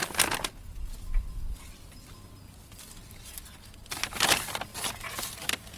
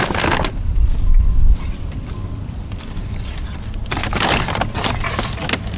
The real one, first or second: first